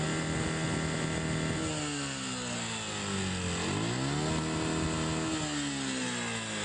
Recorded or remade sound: recorded